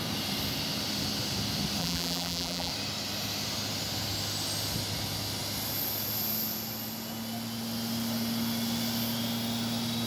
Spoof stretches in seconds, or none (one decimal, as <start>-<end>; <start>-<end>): 1.8-2.7